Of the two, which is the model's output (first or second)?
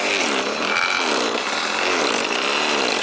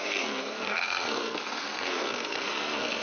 second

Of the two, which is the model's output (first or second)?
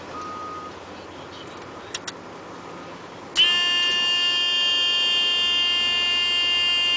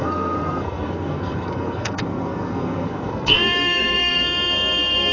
second